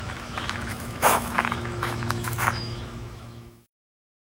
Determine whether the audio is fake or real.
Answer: fake